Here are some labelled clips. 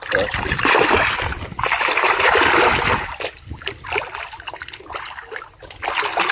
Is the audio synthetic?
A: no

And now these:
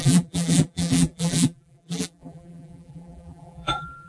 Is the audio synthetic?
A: yes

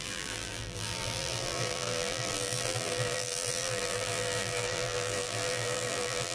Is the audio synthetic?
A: yes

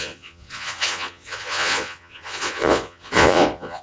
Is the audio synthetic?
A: yes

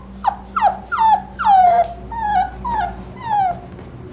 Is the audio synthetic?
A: no